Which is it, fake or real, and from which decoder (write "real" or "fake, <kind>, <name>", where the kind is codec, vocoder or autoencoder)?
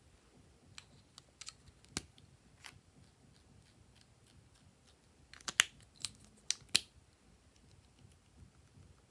real